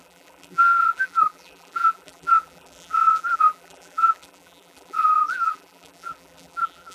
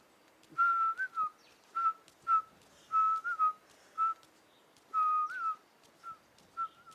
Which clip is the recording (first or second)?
second